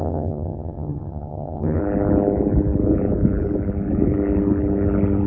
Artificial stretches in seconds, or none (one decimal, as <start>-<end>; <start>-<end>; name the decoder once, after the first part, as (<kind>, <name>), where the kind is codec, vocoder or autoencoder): 0.0-1.8 (vocoder, HiFi-GAN)